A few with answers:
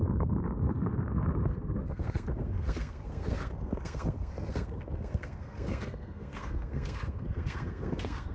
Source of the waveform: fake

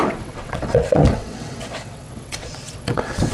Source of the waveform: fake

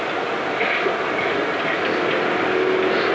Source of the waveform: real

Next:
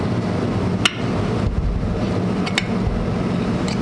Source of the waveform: real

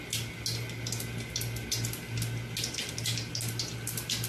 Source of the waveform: real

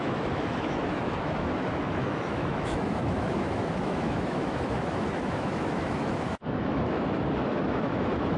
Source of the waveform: fake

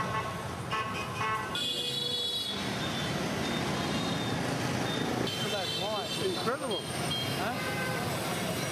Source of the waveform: real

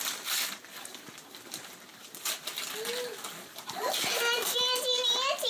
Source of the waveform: real